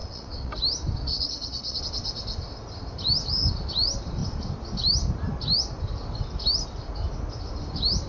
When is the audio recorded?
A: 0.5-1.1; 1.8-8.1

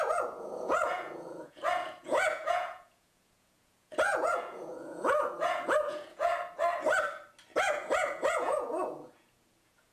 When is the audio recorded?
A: 6.3-7.6

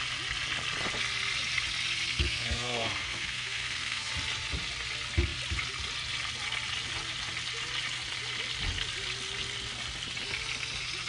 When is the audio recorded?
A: 0.0-2.1; 4.1-11.1